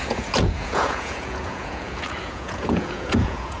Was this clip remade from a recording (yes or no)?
yes